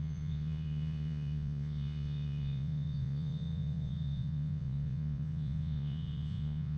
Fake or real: fake